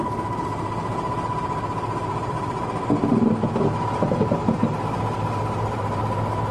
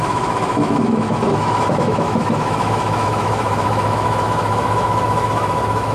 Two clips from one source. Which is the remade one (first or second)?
second